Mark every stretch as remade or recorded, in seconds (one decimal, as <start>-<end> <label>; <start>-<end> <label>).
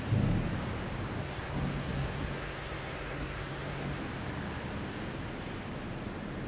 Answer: 0.0-1.2 recorded; 1.2-4.0 remade; 4.0-6.5 recorded